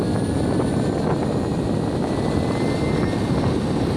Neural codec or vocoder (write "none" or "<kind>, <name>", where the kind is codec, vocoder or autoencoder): none